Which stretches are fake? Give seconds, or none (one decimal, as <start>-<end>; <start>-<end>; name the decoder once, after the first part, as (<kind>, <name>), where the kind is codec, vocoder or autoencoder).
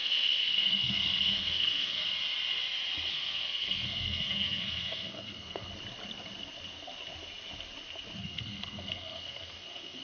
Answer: 0.0-2.0 (codec, SNAC); 3.1-5.7; 8.2-10.0